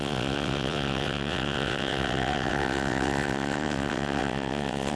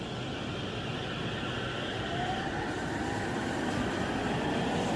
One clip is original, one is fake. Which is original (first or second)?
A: second